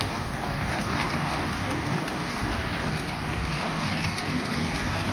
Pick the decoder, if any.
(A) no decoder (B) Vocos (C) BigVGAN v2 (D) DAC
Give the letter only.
D